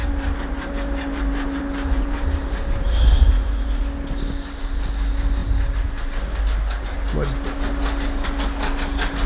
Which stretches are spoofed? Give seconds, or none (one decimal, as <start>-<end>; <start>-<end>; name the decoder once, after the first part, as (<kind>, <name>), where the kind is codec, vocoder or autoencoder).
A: 0.0-3.8 (vocoder, BigVGAN v2)